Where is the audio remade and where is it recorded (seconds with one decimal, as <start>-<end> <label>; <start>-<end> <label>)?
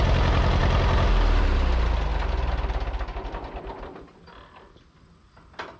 0.0-5.8 recorded